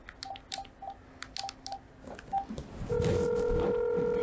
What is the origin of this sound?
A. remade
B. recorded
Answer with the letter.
B